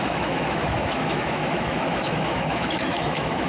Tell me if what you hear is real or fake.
fake